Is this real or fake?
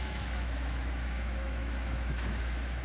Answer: fake